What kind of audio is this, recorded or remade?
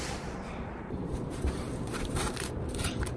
remade